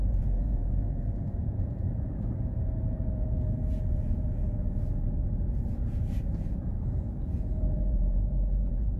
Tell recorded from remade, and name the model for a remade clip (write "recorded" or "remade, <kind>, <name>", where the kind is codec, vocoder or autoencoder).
remade, vocoder, Vocos